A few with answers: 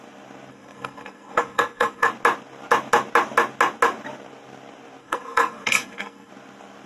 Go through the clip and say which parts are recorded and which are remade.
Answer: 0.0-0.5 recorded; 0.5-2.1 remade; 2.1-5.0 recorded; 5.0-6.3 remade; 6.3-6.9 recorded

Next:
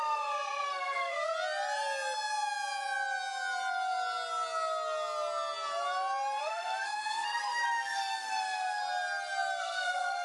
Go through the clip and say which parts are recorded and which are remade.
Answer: 0.0-1.3 remade; 1.3-6.4 recorded; 6.4-8.8 remade; 8.8-9.6 recorded; 9.6-10.2 remade

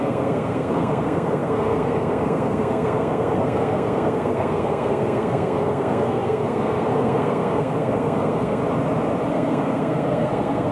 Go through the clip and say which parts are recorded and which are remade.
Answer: 0.0-8.6 remade; 8.6-9.3 recorded; 9.3-10.7 remade

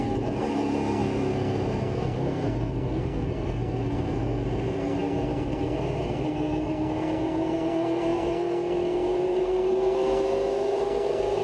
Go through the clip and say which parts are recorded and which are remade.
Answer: 0.0-11.4 remade

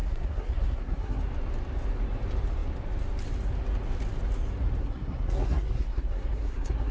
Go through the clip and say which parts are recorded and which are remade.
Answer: 0.0-1.2 remade; 1.2-4.8 recorded; 4.8-6.9 remade

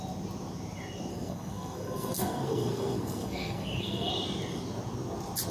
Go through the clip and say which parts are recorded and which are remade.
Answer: 0.0-1.1 recorded; 1.1-4.1 remade; 4.1-5.5 recorded